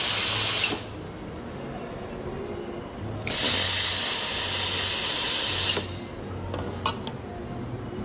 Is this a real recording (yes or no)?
yes